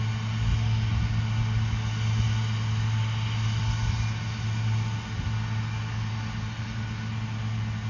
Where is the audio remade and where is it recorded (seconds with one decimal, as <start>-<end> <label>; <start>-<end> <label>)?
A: 0.0-7.9 recorded

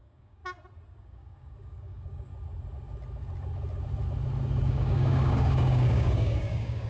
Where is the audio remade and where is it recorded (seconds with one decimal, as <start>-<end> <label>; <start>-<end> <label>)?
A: 0.0-0.4 remade; 0.4-1.0 recorded; 1.0-2.3 remade; 2.3-4.6 recorded; 4.6-6.9 remade